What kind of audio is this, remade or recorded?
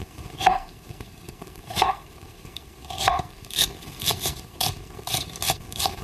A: remade